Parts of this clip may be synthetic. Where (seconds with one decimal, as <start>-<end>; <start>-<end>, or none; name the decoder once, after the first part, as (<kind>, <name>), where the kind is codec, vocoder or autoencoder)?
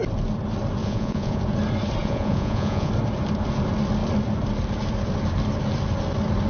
0.8-1.4 (vocoder, Vocos); 2.0-2.9